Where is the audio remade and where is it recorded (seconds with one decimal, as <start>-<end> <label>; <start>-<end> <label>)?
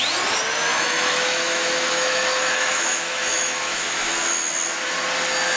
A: 0.0-0.7 recorded; 0.7-4.1 remade; 4.1-5.6 recorded